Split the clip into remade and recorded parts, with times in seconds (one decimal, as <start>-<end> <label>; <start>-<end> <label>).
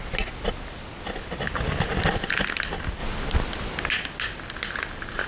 0.0-5.3 recorded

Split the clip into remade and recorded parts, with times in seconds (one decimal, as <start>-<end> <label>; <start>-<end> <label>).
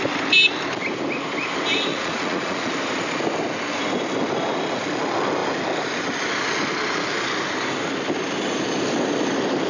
0.0-1.9 recorded; 1.9-2.7 remade; 2.7-9.7 recorded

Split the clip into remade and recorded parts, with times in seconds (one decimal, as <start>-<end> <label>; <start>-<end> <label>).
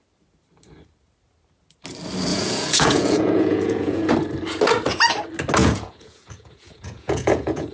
0.0-2.3 recorded; 2.3-4.1 remade; 4.1-5.6 recorded; 5.6-7.7 remade